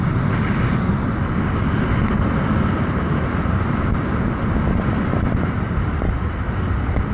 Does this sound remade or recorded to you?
recorded